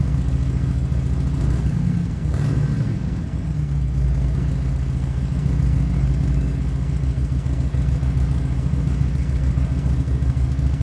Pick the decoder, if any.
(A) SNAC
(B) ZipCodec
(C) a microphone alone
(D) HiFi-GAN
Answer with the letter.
A